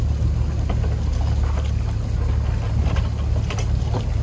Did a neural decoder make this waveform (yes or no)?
no